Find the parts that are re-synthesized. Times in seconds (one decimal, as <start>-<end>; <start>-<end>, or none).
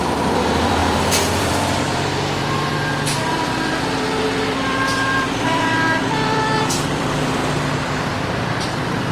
0.0-7.4; 8.0-9.1